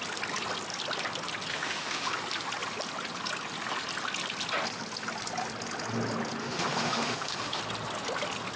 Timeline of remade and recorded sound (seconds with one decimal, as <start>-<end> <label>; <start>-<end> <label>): 0.0-1.5 recorded; 1.5-2.1 remade; 2.1-6.4 recorded; 6.4-7.6 remade; 7.6-8.6 recorded